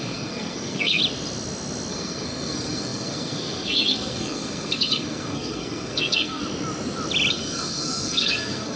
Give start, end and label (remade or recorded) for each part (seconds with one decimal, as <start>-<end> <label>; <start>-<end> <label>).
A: 0.0-1.0 remade; 1.0-1.9 recorded; 1.9-6.4 remade; 6.4-7.3 recorded; 7.3-8.8 remade

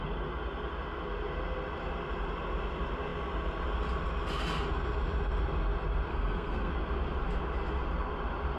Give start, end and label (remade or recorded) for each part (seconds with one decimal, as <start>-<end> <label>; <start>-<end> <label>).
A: 0.0-6.1 recorded; 6.1-6.7 remade; 6.7-8.6 recorded